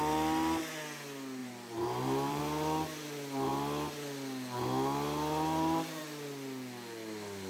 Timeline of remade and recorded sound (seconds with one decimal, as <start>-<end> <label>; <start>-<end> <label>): 0.0-1.4 recorded; 1.4-2.4 remade; 2.4-7.5 recorded